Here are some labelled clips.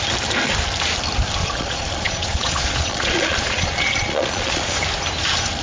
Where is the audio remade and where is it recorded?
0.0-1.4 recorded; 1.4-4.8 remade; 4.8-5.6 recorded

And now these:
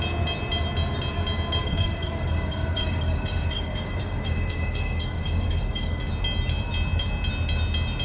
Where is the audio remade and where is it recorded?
0.0-1.6 recorded; 1.6-6.0 remade; 6.0-8.0 recorded

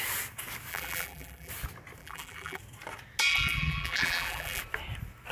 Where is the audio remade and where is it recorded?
0.0-0.7 recorded; 0.7-1.5 remade; 1.5-2.0 recorded; 2.0-2.6 remade; 2.6-3.3 recorded; 3.3-4.6 remade; 4.6-5.3 recorded

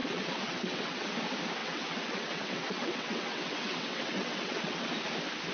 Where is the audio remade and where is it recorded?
0.0-1.1 remade; 1.1-1.6 recorded; 1.6-4.9 remade; 4.9-5.5 recorded

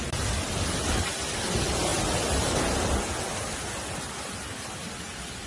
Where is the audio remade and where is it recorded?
0.0-5.5 recorded